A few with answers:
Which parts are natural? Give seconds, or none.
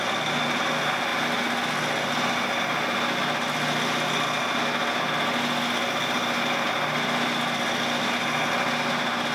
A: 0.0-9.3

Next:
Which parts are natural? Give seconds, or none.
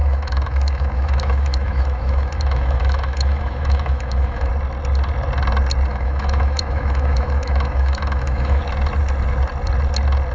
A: 4.5-5.9; 8.6-10.3